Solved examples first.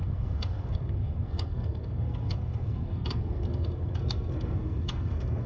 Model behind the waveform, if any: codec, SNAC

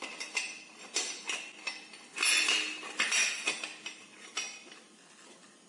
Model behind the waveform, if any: none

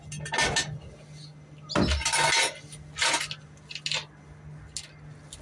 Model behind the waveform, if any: none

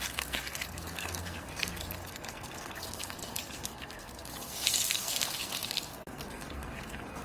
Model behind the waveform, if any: codec, SNAC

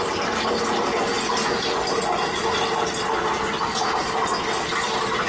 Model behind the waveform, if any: none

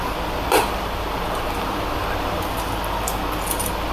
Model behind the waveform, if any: none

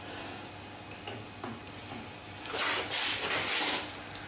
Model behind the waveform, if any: none